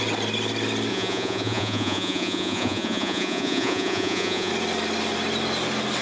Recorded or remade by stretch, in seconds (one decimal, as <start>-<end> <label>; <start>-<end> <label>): 0.0-0.9 recorded; 0.9-4.5 remade; 4.5-6.0 recorded